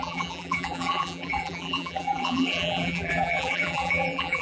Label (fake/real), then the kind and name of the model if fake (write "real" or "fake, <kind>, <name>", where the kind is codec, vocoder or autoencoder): fake, vocoder, BigVGAN v2